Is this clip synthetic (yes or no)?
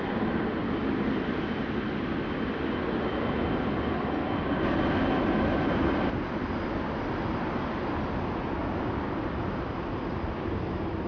no